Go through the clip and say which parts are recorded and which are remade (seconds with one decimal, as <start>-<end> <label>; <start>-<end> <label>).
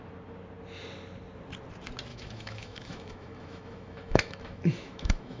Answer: 0.0-2.1 recorded; 2.1-5.4 remade